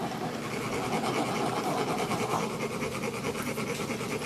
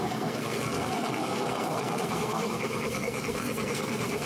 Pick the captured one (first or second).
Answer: first